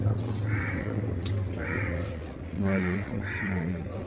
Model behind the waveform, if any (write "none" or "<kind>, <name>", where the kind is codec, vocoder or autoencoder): vocoder, WaveNeXt